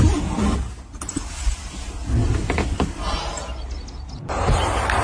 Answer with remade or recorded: recorded